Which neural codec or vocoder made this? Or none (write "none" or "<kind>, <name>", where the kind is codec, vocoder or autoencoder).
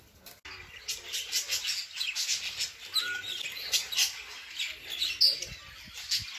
none